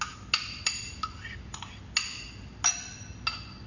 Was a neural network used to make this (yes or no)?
no